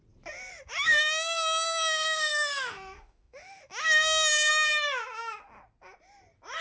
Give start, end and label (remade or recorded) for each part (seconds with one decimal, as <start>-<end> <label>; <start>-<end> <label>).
0.0-0.5 recorded; 0.5-4.5 remade; 4.5-6.6 recorded

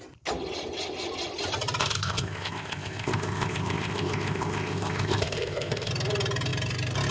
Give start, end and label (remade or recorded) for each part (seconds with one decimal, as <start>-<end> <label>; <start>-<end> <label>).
0.0-1.8 recorded; 1.8-5.9 remade; 5.9-7.1 recorded

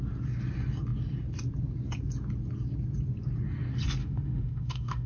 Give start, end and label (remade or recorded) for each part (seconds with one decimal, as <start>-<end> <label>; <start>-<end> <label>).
0.0-4.0 recorded; 4.0-5.1 remade

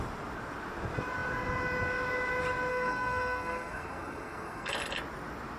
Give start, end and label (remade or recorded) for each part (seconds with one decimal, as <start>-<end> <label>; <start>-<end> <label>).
0.0-2.7 recorded; 2.7-4.7 remade; 4.7-5.6 recorded

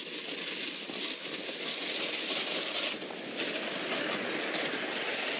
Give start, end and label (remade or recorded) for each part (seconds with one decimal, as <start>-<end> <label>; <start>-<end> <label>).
0.0-5.4 recorded

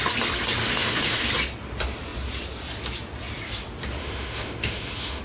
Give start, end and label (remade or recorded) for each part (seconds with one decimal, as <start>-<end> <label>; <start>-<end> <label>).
0.0-0.6 recorded; 0.6-1.3 remade; 1.3-4.0 recorded; 4.0-5.2 remade

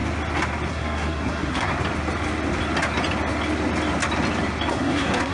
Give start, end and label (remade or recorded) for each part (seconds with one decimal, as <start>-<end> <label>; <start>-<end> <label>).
0.0-0.7 recorded; 0.7-1.7 remade; 1.7-4.7 recorded; 4.7-5.3 remade

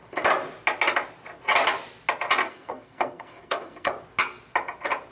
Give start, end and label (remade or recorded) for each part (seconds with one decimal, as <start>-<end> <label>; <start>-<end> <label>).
0.0-2.4 recorded; 2.4-3.9 remade; 3.9-5.1 recorded